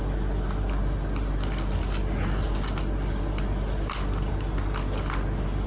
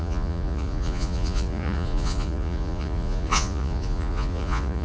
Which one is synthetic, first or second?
second